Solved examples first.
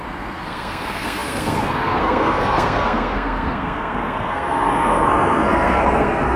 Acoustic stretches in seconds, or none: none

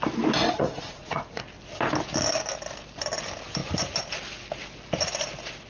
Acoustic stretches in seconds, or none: 0.0-0.4; 1.4-5.7

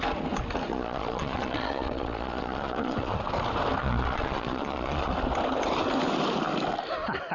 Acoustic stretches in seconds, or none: 0.0-0.7; 3.2-3.8; 5.1-7.3

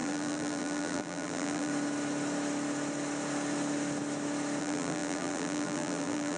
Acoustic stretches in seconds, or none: 1.7-4.6

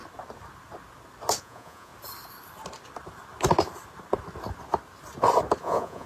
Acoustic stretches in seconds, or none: 0.0-1.4; 1.9-5.6

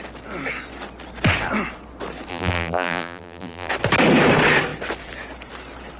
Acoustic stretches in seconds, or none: 0.0-2.3; 3.7-6.0

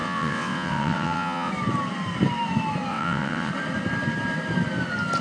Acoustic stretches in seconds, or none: 1.5-2.9; 3.5-5.2